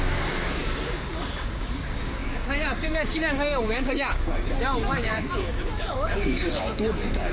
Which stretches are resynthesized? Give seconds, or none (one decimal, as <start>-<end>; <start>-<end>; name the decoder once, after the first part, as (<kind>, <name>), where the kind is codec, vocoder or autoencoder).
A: 0.0-7.3 (codec, DAC)